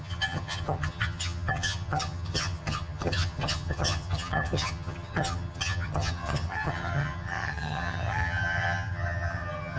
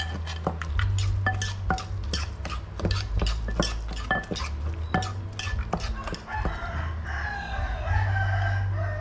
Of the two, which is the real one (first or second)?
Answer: second